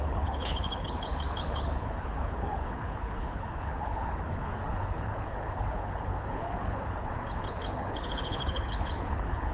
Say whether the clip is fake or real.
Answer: fake